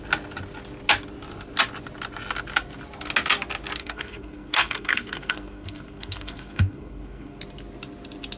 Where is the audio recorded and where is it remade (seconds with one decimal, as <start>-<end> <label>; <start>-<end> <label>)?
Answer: 0.0-3.8 recorded; 3.8-7.4 remade; 7.4-8.4 recorded